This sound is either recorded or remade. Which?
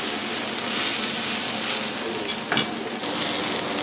recorded